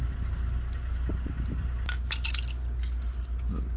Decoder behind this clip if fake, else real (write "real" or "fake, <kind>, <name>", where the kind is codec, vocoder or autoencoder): real